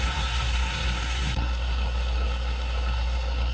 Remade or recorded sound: remade